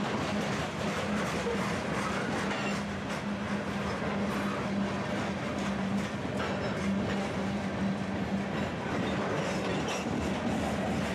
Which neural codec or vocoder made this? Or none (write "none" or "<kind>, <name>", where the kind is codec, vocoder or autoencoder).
none